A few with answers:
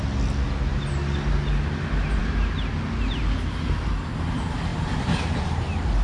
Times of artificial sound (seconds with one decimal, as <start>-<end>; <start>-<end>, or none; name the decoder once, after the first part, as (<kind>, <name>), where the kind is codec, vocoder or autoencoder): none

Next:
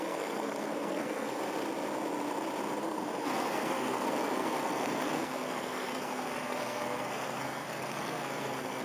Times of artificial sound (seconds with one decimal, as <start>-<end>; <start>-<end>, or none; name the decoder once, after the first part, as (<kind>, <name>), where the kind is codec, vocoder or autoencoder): 0.0-1.4 (codec, SNAC); 2.8-8.8

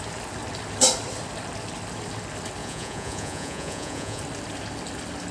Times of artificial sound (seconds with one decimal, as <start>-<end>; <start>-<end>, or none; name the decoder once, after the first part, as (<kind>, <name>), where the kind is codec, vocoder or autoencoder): 2.6-4.2 (vocoder, Vocos)

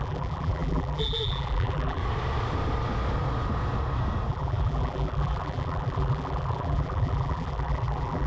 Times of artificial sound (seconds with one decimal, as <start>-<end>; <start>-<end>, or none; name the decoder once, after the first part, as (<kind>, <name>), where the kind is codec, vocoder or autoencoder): 0.0-2.0 (vocoder, BigVGAN v2); 4.3-8.3

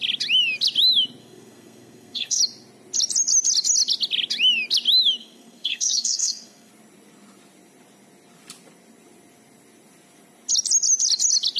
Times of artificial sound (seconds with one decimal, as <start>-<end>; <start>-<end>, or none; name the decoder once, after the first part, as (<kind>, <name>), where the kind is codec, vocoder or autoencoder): 1.2-2.4 (codec, SNAC); 5.2-6.7